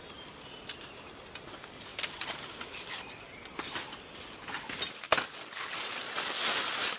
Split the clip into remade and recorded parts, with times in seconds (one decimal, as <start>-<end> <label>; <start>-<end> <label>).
0.0-7.0 recorded